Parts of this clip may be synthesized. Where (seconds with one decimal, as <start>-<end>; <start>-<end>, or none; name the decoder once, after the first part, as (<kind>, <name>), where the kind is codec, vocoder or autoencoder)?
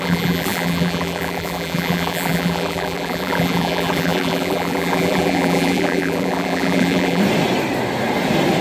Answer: 0.0-7.2 (vocoder, BigVGAN v2)